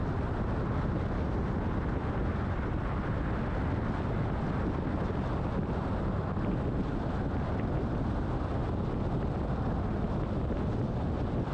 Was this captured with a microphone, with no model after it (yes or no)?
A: yes